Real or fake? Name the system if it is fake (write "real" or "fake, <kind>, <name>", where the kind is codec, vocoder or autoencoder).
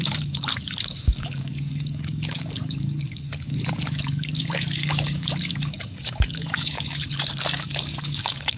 fake, codec, DAC